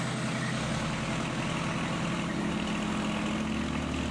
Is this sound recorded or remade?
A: recorded